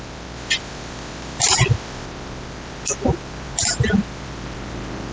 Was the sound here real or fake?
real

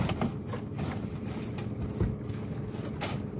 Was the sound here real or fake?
real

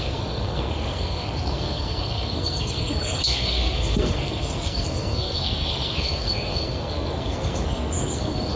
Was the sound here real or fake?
fake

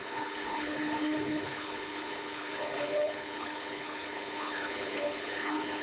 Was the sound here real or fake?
fake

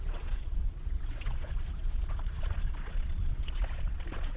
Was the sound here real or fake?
fake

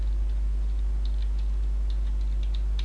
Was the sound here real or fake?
real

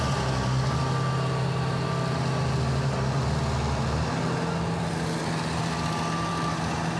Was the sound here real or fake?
real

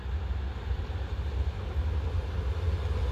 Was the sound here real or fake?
real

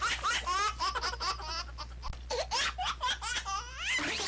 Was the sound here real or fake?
real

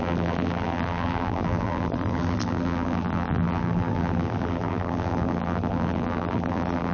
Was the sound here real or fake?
fake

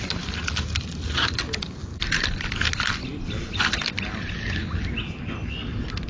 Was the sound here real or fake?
real